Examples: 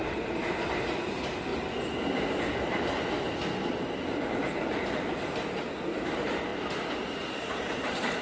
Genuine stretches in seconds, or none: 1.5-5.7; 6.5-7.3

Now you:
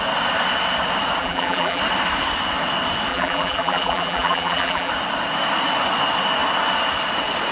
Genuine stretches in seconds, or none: 0.0-1.2; 1.8-3.1; 4.9-7.5

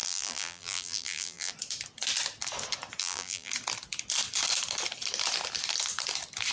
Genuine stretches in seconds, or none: 1.5-3.0; 3.5-6.5

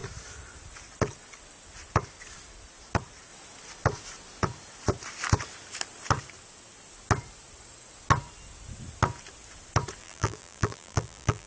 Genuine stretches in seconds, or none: 0.0-10.0

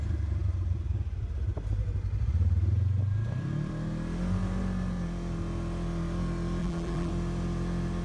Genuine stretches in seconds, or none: 0.0-6.6; 7.1-8.0

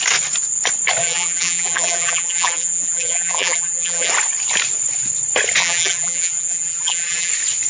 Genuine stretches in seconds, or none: 0.0-1.0; 4.1-5.6; 7.3-7.7

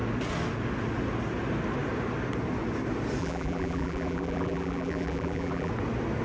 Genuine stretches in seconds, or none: 0.0-3.2; 5.7-6.2

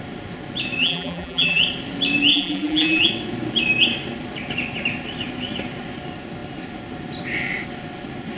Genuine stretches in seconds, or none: 0.0-0.8; 1.6-2.3; 3.1-8.4